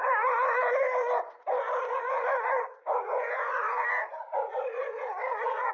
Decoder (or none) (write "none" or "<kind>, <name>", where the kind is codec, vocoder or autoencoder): none